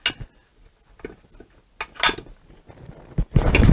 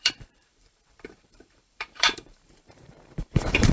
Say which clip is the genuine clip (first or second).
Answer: first